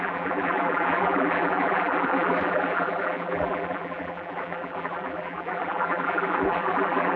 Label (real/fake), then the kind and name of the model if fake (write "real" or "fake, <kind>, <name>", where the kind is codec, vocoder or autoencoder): fake, vocoder, BigVGAN v2